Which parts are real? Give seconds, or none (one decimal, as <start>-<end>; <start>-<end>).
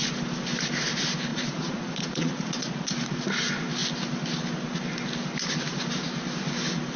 0.0-1.3; 3.2-7.0